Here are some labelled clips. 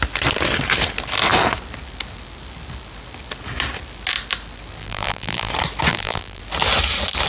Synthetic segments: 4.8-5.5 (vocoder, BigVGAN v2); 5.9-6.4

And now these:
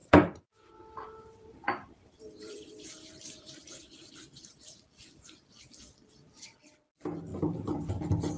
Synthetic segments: 0.0-4.1 (vocoder, BigVGAN v2); 7.3-7.9